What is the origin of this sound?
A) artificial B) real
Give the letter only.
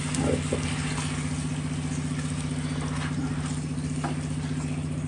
B